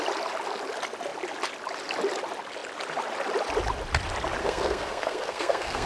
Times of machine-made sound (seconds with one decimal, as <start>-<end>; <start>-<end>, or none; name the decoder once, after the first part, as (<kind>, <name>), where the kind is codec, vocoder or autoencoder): 4.4-5.9 (codec, SNAC)